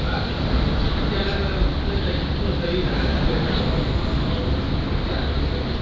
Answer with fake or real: real